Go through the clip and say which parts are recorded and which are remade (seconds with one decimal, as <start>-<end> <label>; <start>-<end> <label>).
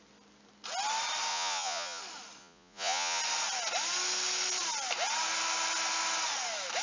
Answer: 0.0-1.3 recorded; 1.3-2.0 remade; 2.0-2.4 recorded; 2.4-3.2 remade; 3.2-6.8 recorded